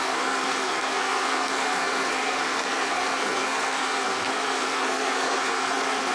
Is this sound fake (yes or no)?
yes